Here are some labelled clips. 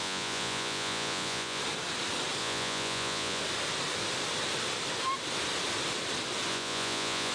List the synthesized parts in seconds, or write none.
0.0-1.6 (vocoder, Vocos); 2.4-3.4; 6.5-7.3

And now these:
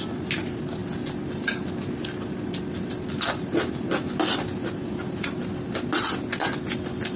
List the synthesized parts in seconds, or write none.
none

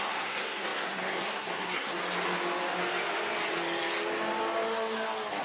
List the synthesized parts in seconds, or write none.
0.0-2.0 (codec, SNAC)

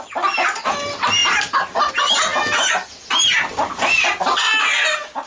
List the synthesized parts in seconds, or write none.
none

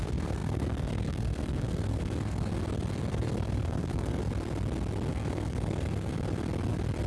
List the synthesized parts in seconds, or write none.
0.0-2.5 (codec, SNAC); 3.1-4.2; 5.1-6.1

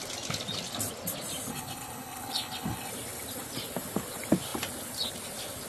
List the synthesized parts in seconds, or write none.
1.5-2.9 (codec, HILCodec)

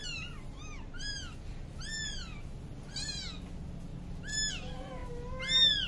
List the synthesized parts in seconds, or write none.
none

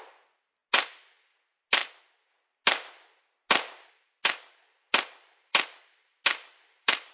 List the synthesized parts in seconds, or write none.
none